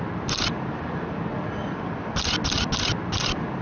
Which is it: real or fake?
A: real